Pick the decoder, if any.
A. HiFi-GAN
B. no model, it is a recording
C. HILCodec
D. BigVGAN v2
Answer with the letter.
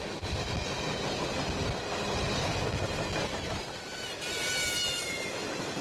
B